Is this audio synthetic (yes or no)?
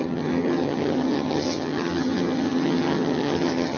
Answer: yes